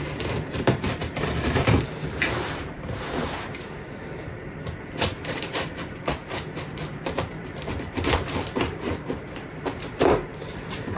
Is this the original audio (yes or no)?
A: no